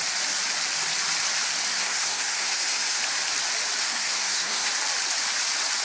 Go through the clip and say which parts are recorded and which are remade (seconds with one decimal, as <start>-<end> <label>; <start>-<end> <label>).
0.0-1.7 recorded; 1.7-3.0 remade; 3.0-3.8 recorded; 3.8-4.7 remade; 4.7-5.8 recorded